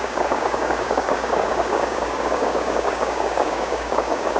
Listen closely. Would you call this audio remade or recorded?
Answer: remade